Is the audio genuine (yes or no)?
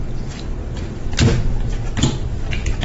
yes